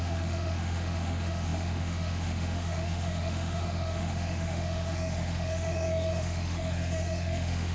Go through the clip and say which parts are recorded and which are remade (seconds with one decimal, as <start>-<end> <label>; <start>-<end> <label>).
0.0-7.7 remade